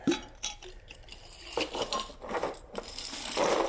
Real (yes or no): no